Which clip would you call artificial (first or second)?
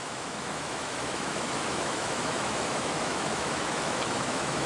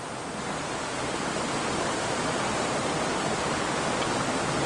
first